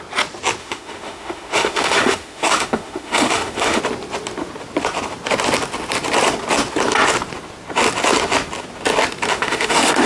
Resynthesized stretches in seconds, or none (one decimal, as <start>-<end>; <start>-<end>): 0.6-3.8; 9.3-10.1